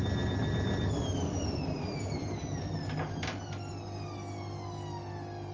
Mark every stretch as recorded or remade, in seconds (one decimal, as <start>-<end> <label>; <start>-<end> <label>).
0.0-5.5 recorded